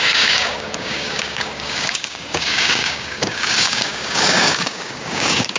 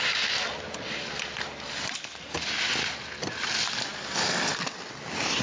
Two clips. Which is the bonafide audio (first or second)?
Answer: second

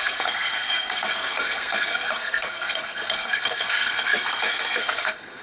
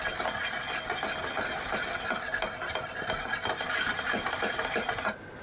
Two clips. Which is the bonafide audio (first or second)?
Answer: second